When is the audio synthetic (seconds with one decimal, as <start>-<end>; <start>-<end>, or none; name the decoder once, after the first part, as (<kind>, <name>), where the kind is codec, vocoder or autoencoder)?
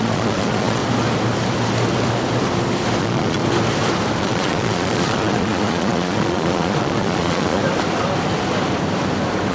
0.0-0.8 (vocoder, Vocos); 3.0-3.4; 4.2-7.6